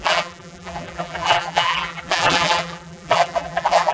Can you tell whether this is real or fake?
fake